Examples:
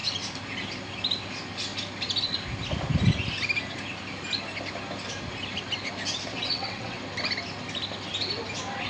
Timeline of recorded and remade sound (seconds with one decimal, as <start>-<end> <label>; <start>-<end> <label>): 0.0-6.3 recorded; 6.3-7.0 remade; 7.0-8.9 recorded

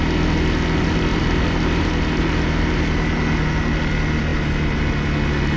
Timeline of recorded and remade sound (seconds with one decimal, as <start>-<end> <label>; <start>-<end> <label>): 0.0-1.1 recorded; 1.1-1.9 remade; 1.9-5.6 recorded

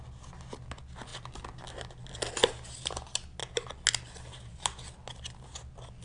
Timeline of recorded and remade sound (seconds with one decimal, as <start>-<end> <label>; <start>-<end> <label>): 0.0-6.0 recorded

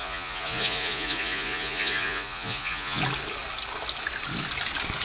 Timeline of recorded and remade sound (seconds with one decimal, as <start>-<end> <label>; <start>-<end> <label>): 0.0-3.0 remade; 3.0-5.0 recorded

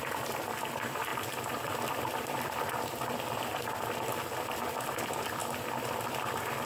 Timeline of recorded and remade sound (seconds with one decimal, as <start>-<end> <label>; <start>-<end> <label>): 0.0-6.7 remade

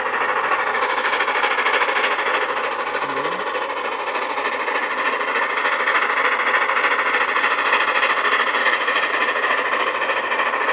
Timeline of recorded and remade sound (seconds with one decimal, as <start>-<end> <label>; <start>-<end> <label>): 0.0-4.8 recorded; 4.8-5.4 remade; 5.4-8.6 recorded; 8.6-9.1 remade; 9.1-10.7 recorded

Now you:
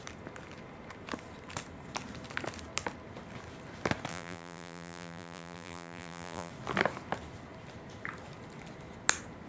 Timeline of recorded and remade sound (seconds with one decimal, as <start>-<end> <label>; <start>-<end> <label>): 0.0-4.1 recorded; 4.1-6.5 remade; 6.5-9.5 recorded

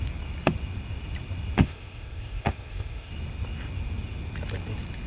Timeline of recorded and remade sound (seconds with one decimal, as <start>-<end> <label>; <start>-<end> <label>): 0.0-1.6 recorded; 1.6-3.1 remade; 3.1-5.1 recorded